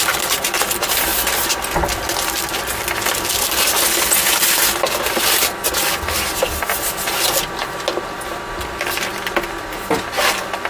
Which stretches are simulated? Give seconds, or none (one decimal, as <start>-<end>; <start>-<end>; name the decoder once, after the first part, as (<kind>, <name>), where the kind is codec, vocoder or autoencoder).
none